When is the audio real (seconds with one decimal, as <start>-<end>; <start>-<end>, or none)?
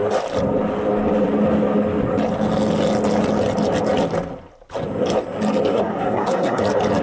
0.0-5.7; 6.6-7.0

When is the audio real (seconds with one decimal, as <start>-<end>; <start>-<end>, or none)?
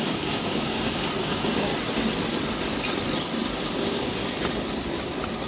1.7-3.7; 4.2-5.5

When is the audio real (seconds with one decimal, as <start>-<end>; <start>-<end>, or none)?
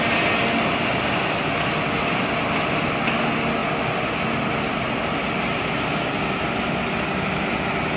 0.0-8.0